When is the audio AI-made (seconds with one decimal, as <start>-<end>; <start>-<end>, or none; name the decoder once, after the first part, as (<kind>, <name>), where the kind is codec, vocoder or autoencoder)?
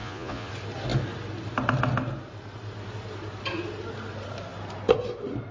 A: 0.0-0.5 (vocoder, Vocos)